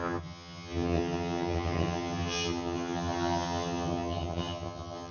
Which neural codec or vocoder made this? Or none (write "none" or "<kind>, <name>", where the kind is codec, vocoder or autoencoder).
vocoder, HiFi-GAN